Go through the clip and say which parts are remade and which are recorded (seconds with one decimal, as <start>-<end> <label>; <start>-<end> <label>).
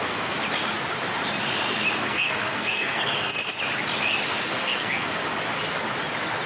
0.0-0.4 remade; 0.4-2.0 recorded; 2.0-3.4 remade; 3.4-4.5 recorded; 4.5-5.2 remade; 5.2-6.5 recorded